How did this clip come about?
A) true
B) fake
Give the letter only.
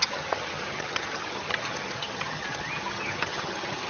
B